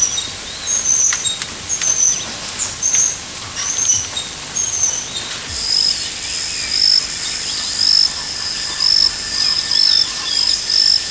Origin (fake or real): real